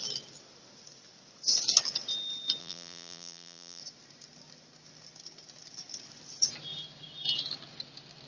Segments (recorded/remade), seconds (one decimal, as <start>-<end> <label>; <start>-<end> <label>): 0.0-2.6 recorded; 2.6-3.8 remade; 3.8-8.3 recorded